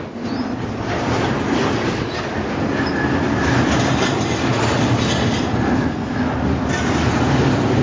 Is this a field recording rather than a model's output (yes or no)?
yes